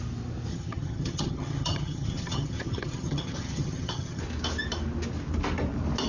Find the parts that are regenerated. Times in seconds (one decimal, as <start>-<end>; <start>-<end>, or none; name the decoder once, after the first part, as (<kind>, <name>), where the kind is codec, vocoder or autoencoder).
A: 0.5-4.2 (vocoder, HiFi-GAN)